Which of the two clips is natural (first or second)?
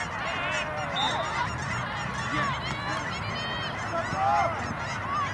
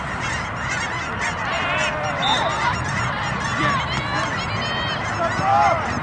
first